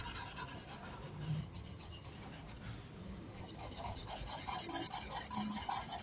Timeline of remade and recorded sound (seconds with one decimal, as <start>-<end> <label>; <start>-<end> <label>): 0.0-1.4 recorded; 1.4-2.1 remade; 2.1-3.0 recorded; 3.0-4.1 remade; 4.1-6.0 recorded